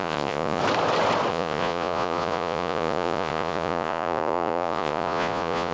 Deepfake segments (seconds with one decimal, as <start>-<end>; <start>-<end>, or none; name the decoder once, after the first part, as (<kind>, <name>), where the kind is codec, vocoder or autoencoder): 0.0-0.6 (vocoder, Vocos); 1.3-5.7